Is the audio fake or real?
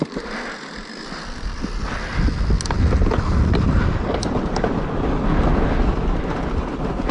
real